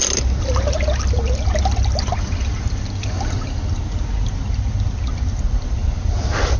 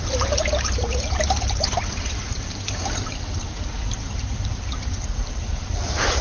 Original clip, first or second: first